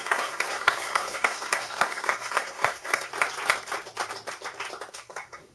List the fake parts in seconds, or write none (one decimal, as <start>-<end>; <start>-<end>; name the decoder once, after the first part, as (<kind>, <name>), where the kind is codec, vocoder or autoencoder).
0.0-3.1 (codec, SNAC); 4.9-5.5